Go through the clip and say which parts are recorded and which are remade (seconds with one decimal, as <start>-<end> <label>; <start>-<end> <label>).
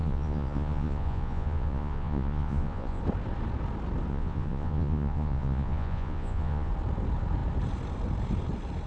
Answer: 0.0-3.0 remade; 3.0-4.1 recorded; 4.1-6.7 remade; 6.7-8.9 recorded